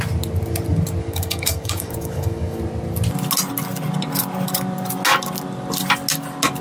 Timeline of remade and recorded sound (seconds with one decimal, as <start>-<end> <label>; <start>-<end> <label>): 0.0-1.0 recorded; 1.0-2.6 remade; 2.6-6.6 recorded